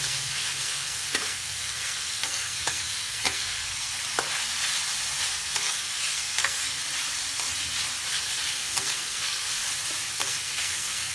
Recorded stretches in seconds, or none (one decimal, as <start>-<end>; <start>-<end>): 4.0-5.3; 6.8-8.1; 9.6-10.1